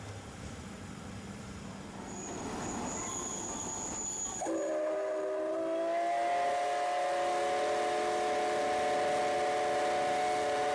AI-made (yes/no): no